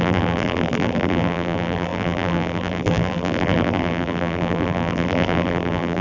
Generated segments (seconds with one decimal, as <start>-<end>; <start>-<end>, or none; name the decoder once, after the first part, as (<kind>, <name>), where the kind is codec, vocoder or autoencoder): 0.0-6.0 (vocoder, BigVGAN v2)